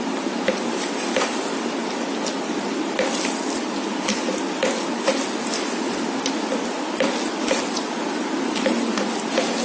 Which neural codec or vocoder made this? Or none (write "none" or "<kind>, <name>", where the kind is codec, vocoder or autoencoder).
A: none